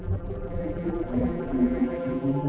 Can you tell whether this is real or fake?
fake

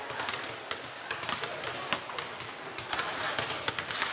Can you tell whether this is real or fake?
real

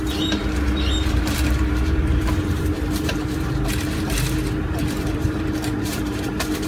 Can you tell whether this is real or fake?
fake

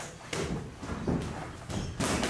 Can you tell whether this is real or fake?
real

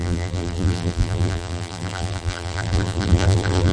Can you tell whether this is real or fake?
fake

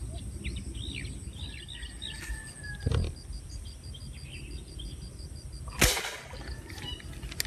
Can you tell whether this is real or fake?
real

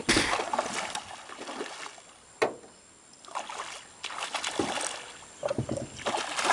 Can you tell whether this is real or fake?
real